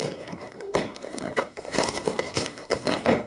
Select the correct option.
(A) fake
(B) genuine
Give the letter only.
A